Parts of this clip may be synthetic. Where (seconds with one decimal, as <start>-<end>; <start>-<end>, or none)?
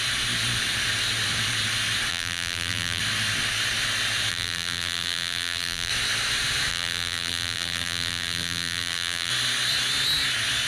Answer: 2.1-3.0; 4.3-5.9; 6.7-9.3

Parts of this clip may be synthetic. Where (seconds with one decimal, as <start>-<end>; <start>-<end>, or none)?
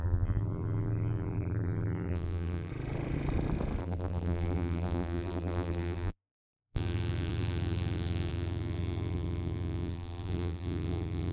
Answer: 0.0-2.7; 3.8-11.3